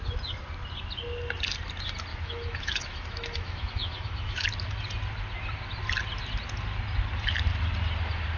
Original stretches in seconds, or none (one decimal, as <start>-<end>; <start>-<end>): 0.0-2.1; 4.5-8.4